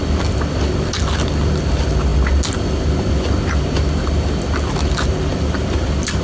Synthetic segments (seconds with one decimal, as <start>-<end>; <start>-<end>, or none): none